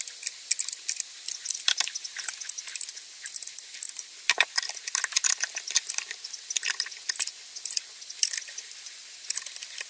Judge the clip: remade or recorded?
recorded